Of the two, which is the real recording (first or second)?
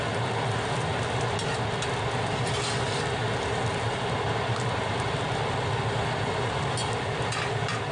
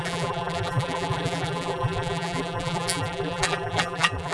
first